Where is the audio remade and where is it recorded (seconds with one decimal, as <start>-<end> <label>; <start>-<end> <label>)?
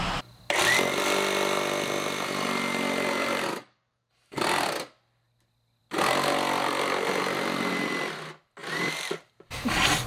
0.0-3.5 recorded; 3.5-4.1 remade; 4.1-10.1 recorded